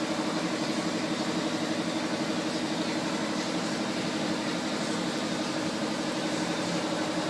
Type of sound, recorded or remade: recorded